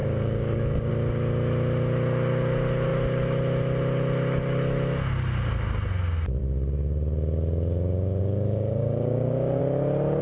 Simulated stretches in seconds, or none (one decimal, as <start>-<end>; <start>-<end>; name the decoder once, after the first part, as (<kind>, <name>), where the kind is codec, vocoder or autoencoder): 0.0-0.9 (codec, DAC); 8.2-9.6